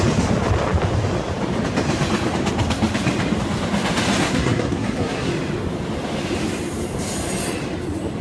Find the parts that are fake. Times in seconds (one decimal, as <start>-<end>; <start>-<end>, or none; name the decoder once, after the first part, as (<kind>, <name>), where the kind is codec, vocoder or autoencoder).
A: 4.2-5.3 (codec, SNAC)